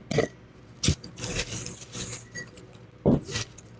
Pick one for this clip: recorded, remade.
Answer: recorded